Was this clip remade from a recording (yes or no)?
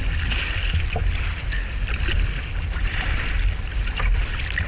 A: no